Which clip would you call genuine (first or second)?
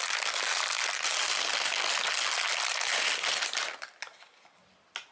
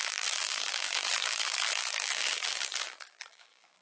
first